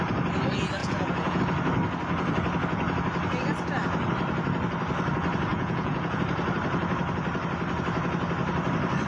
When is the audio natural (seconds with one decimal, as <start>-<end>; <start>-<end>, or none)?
0.0-0.8; 1.4-5.5; 6.2-9.1